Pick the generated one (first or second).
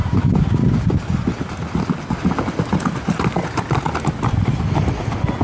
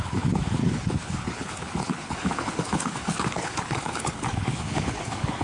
second